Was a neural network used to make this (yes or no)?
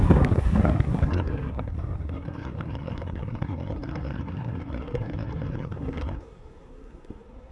yes